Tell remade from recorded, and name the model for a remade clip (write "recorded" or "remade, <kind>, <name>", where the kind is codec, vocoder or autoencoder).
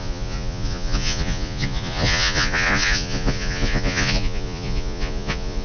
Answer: remade, vocoder, Vocos